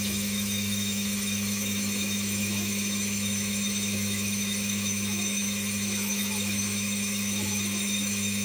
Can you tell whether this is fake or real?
fake